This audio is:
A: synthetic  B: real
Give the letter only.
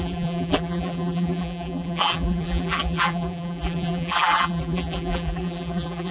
A